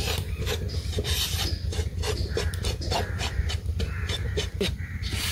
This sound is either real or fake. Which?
fake